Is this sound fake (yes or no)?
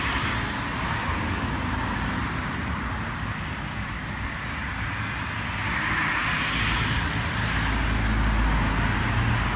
no